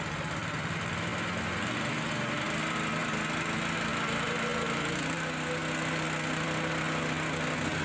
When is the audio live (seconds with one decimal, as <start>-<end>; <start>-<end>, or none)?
0.0-7.8